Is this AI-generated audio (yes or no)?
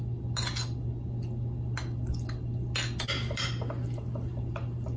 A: no